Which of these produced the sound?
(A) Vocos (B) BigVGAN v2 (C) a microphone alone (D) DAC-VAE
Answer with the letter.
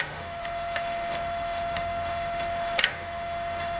D